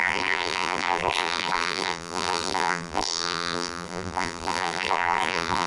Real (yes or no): no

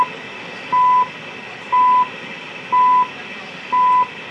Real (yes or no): yes